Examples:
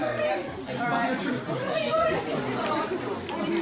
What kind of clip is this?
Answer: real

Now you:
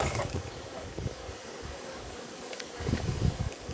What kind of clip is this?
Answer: fake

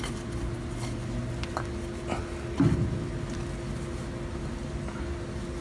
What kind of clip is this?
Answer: real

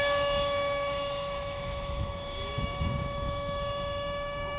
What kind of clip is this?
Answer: fake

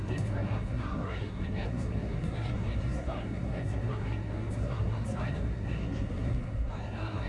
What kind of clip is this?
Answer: fake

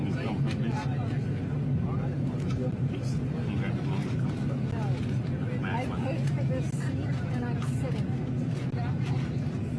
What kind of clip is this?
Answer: real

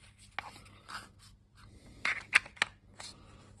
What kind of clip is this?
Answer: real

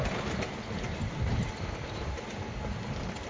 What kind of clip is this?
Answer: real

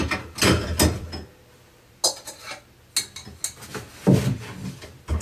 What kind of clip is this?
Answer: real